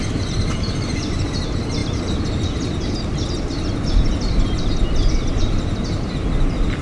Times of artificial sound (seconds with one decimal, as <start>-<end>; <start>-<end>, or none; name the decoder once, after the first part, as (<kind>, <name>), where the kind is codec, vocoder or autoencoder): 0.0-6.8 (vocoder, BigVGAN v2)

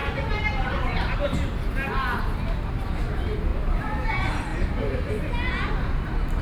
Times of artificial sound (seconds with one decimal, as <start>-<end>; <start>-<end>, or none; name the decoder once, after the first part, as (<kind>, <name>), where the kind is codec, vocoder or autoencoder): 0.0-2.2 (vocoder, BigVGAN v2); 3.5-4.1

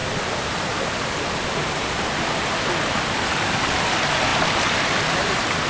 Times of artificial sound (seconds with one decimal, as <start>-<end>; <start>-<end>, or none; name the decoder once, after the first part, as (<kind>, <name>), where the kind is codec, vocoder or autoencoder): none

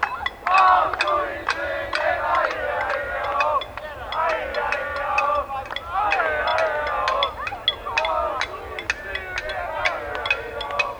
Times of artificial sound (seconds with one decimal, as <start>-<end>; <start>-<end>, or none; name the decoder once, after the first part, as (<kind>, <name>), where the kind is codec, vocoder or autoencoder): 1.3-3.4 (vocoder, BigVGAN v2)